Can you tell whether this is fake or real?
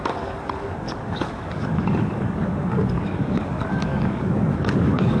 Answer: fake